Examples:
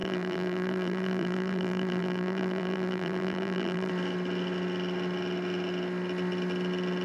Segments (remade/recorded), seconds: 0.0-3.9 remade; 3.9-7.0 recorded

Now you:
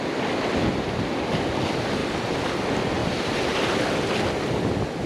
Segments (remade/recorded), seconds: 0.0-2.0 recorded; 2.0-2.6 remade; 2.6-3.0 recorded; 3.0-4.0 remade; 4.0-5.1 recorded

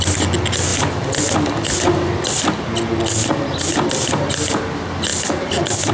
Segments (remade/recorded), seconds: 0.0-5.9 recorded

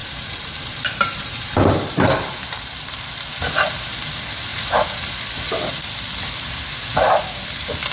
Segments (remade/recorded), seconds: 0.0-3.3 remade; 3.3-4.5 recorded; 4.5-5.1 remade; 5.1-7.9 recorded

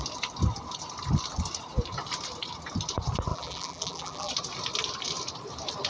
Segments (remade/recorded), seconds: 0.0-3.3 recorded; 3.3-4.3 remade; 4.3-5.9 recorded

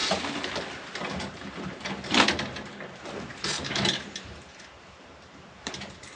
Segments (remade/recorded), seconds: 0.0-1.2 recorded; 1.2-6.2 remade